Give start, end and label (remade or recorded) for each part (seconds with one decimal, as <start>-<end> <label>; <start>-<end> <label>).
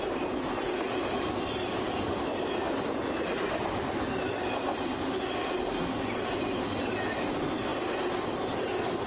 0.0-9.1 recorded